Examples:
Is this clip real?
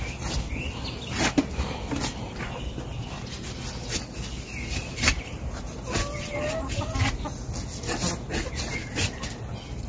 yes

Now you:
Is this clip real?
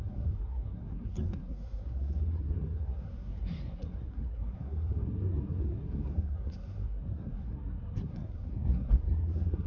no